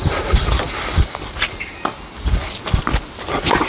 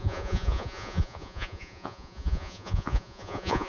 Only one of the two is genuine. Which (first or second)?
first